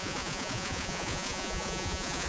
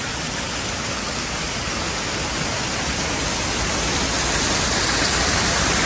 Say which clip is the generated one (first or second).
first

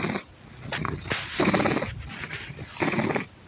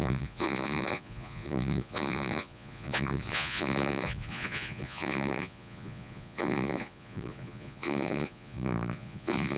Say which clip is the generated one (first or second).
second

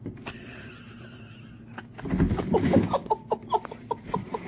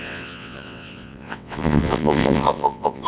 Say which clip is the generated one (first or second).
second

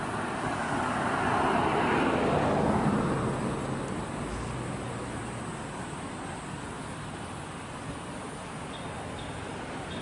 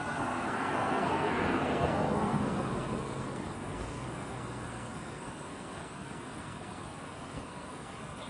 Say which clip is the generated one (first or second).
second